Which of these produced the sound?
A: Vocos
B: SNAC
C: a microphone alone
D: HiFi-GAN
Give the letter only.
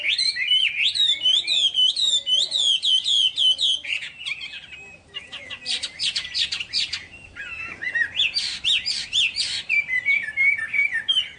C